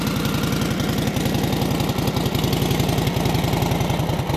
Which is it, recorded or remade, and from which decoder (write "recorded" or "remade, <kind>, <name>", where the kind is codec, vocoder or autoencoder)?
recorded